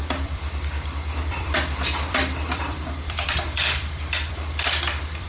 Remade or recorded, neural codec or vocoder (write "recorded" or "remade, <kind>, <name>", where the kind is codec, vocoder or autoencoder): remade, vocoder, BigVGAN v2